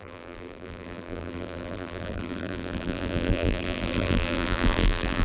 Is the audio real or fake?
fake